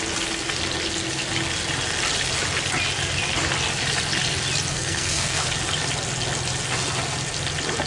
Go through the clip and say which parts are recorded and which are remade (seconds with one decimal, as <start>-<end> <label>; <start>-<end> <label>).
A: 0.0-4.7 recorded; 4.7-5.5 remade; 5.5-7.9 recorded